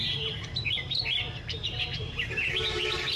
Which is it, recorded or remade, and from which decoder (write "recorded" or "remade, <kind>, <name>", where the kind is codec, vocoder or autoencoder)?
remade, vocoder, BigVGAN v2